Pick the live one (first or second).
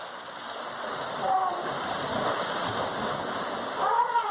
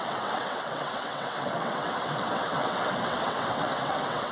first